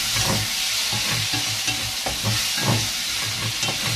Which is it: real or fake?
real